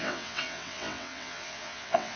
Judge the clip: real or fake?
fake